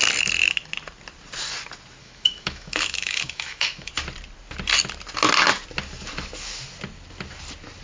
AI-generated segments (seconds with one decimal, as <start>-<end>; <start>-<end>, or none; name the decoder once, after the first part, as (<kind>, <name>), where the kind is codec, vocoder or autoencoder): 2.0-3.9 (autoencoder, DAC-VAE)